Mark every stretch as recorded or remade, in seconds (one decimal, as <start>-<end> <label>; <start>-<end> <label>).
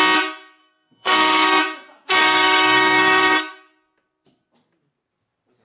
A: 0.0-0.6 recorded; 0.6-1.6 remade; 1.6-2.2 recorded; 2.2-3.4 remade; 3.4-5.6 recorded